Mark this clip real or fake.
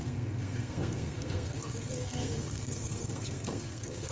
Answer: fake